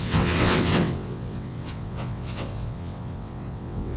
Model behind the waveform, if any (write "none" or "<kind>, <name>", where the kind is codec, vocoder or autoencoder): vocoder, WaveNeXt